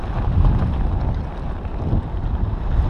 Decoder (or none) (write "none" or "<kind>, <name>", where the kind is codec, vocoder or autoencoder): none